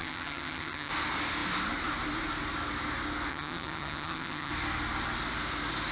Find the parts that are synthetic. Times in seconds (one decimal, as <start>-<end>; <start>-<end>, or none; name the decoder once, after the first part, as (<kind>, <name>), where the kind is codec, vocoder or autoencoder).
0.0-0.9 (vocoder, HiFi-GAN); 3.3-4.5